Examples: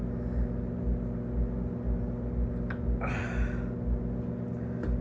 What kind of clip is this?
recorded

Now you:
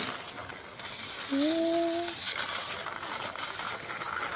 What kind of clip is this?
recorded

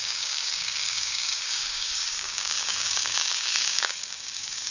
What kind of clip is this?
remade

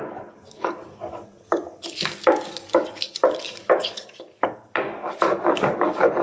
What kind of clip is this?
remade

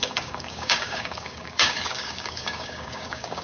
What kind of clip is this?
remade